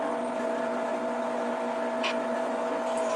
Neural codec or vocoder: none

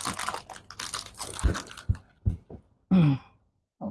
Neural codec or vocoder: none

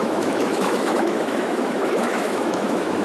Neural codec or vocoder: autoencoder, DAC-VAE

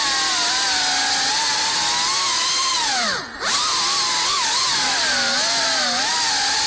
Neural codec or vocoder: none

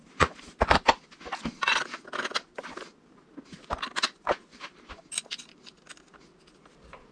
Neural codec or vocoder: none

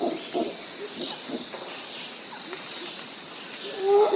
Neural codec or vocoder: none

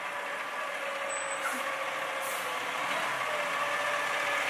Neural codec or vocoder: none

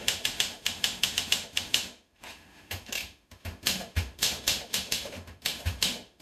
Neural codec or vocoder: autoencoder, DAC-VAE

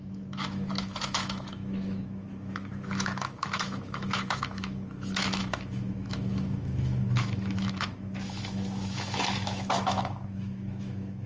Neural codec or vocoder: autoencoder, DAC-VAE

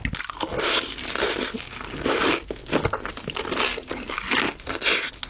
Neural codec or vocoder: none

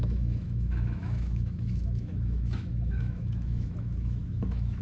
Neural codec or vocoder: autoencoder, DAC-VAE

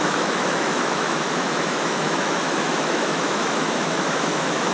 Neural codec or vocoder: autoencoder, DAC-VAE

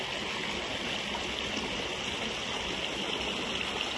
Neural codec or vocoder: none